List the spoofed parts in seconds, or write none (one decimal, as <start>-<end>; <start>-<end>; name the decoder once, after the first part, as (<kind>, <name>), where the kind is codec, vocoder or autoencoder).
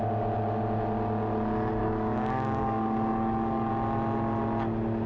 1.8-3.7 (codec, DAC)